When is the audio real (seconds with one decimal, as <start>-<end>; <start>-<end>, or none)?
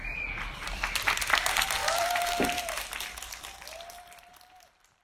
0.0-1.8